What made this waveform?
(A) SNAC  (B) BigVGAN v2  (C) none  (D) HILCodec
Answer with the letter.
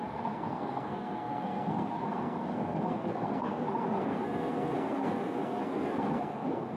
A